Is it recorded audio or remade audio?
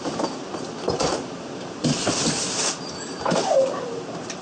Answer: remade